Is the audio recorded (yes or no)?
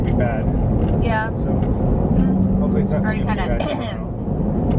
yes